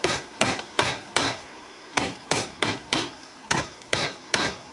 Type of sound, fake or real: fake